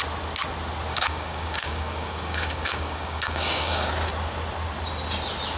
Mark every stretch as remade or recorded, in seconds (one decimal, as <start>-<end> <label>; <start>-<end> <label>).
0.0-0.9 recorded; 0.9-3.9 remade; 3.9-5.6 recorded